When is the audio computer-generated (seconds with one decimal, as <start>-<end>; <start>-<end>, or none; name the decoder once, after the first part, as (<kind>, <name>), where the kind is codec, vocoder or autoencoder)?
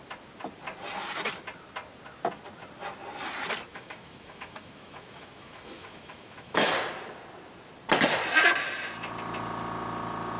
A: 3.7-6.7 (autoencoder, DAC-VAE)